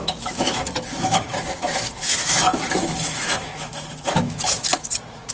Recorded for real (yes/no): no